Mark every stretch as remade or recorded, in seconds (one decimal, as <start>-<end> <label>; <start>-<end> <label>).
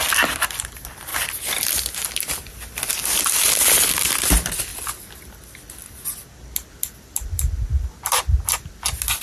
0.0-9.2 recorded